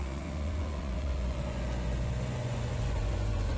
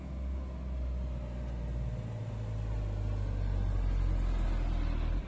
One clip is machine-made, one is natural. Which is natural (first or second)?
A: second